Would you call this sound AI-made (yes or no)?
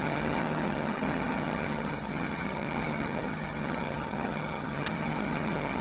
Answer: yes